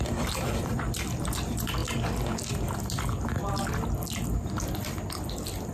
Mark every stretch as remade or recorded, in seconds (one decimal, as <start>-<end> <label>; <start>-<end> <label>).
0.0-1.8 remade; 1.8-5.2 recorded; 5.2-5.7 remade